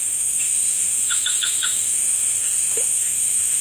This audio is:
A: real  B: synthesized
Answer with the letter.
B